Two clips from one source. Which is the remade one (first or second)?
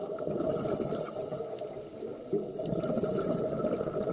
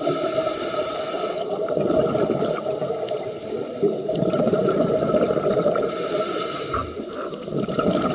second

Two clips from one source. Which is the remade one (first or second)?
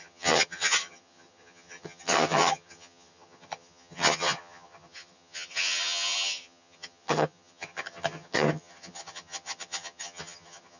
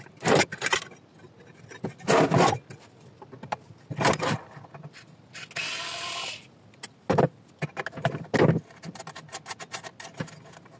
first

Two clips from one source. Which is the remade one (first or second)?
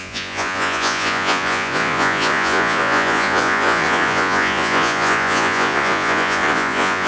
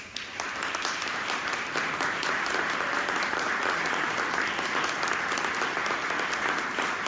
first